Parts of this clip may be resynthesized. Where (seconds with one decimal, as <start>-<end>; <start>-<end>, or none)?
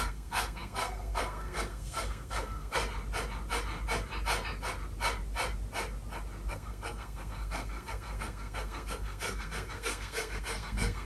0.0-2.8; 6.5-11.0